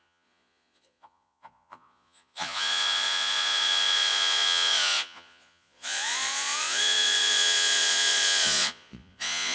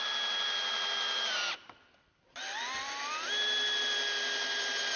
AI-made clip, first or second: first